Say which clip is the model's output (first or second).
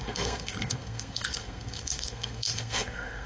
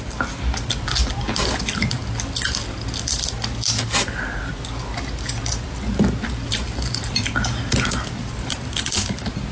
first